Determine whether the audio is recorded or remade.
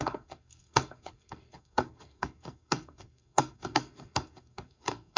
remade